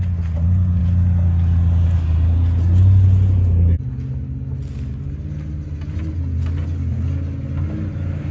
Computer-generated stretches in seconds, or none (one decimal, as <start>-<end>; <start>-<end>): none